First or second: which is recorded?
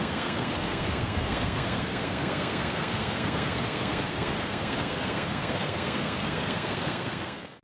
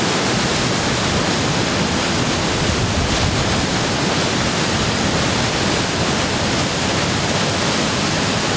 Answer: second